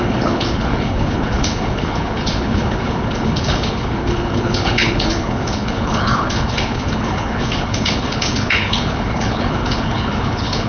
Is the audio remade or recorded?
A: remade